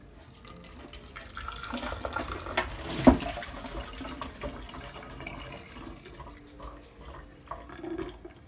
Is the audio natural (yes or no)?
yes